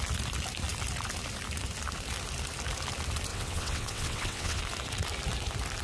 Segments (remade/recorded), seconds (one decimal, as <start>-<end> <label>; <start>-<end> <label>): 0.0-3.3 recorded; 3.3-4.6 remade; 4.6-5.8 recorded